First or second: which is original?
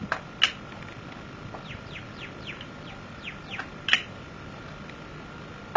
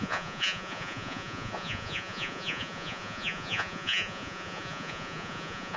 first